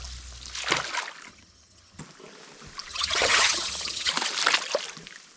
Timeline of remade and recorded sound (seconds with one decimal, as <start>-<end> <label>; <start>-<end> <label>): 0.0-1.3 recorded; 1.3-2.0 remade; 2.0-2.9 recorded; 2.9-4.1 remade; 4.1-5.4 recorded